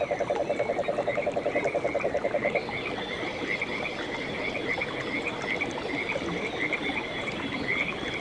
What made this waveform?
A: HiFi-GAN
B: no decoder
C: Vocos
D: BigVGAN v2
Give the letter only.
B